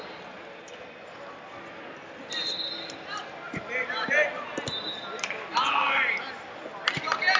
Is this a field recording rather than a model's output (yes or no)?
yes